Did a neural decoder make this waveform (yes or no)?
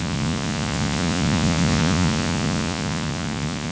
yes